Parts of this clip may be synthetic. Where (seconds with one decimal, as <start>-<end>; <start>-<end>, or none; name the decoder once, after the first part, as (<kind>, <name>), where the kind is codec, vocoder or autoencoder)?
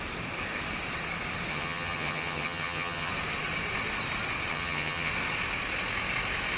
1.5-3.1 (vocoder, HiFi-GAN); 4.5-5.1